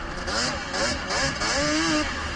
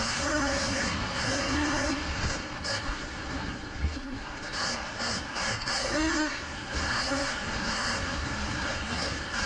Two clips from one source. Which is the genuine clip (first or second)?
first